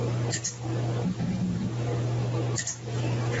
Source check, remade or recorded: recorded